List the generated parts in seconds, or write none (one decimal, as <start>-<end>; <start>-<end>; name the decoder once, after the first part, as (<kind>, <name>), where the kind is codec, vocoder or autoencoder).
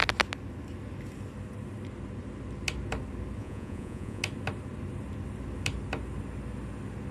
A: 3.4-4.2 (vocoder, Vocos)